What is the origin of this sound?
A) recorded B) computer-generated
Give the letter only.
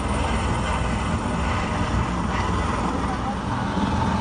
A